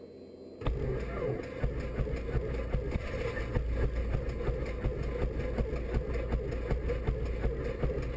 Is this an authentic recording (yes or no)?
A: yes